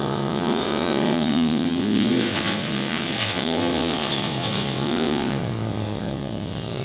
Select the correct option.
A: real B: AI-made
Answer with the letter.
B